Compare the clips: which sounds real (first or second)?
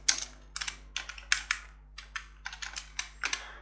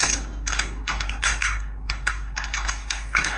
first